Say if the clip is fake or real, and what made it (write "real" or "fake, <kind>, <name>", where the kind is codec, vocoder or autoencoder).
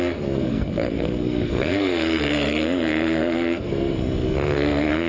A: fake, codec, SNAC